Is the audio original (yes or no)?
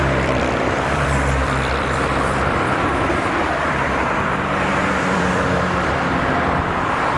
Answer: no